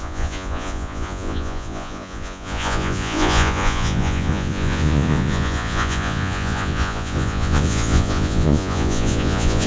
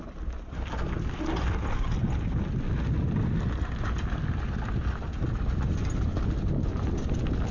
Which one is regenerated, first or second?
first